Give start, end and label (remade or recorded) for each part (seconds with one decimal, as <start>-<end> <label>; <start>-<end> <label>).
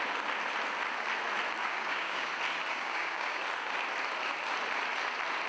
0.0-1.6 recorded; 1.6-2.3 remade; 2.3-2.7 recorded; 2.7-3.4 remade; 3.4-5.5 recorded